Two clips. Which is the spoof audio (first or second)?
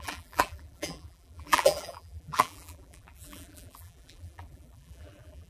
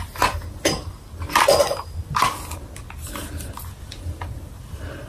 first